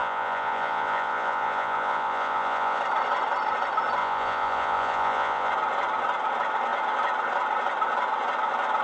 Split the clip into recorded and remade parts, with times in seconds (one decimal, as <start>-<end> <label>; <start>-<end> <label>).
0.0-2.8 remade; 2.8-4.0 recorded; 4.0-5.5 remade; 5.5-8.8 recorded